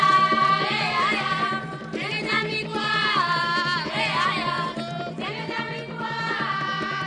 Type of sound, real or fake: real